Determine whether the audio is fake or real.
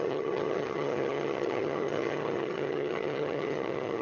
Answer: fake